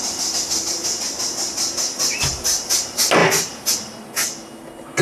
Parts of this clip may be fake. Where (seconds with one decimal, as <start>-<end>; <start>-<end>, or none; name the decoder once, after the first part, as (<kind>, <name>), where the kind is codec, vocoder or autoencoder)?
none